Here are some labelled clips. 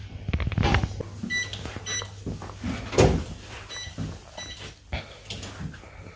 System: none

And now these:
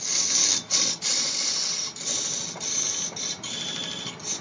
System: none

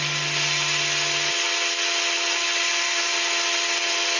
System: none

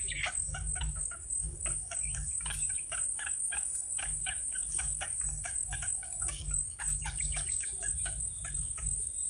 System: codec, DAC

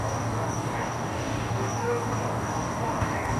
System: codec, DAC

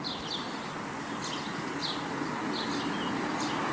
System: none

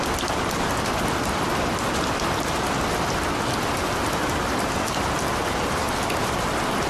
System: none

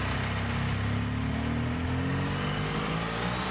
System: none